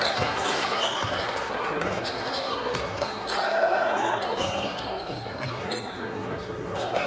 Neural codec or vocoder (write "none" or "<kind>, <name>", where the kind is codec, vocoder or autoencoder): codec, SNAC